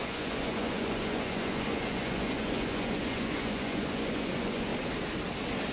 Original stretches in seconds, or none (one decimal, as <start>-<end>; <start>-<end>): 4.7-5.7